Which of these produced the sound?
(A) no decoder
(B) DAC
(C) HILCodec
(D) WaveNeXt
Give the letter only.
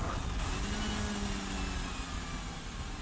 A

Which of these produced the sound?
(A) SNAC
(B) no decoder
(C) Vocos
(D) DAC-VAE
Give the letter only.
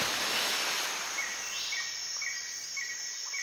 B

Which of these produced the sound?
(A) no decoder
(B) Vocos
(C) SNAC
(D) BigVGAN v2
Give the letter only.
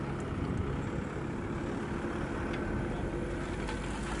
A